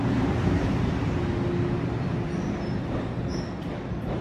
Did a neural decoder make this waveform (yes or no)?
no